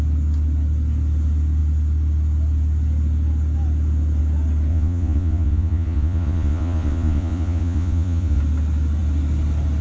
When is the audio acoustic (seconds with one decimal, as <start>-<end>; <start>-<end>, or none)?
0.0-4.7; 8.4-9.8